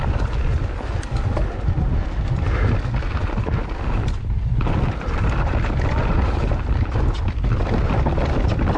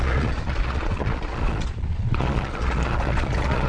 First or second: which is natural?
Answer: first